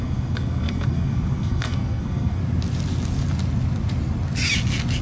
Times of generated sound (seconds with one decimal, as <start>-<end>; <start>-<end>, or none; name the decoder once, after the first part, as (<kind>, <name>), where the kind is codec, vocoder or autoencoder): 0.0-2.4 (codec, SNAC)